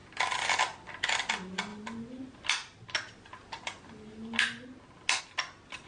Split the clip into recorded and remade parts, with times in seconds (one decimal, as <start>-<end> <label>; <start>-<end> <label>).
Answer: 0.0-5.9 recorded